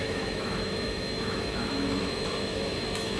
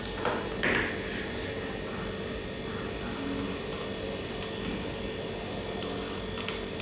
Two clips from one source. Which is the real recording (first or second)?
second